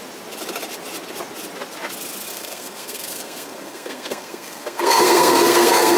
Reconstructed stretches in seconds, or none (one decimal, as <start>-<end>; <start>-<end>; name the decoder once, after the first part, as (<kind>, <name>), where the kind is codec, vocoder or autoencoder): 2.3-6.0 (codec, SNAC)